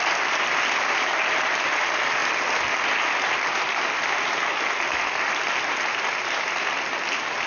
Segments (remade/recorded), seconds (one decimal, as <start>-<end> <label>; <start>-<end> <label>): 0.0-7.5 recorded